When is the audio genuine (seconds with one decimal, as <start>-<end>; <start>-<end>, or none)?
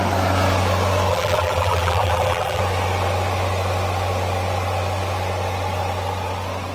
0.0-1.1; 2.6-6.7